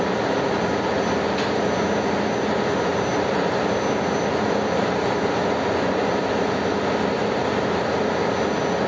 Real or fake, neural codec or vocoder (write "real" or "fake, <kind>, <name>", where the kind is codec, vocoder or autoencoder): real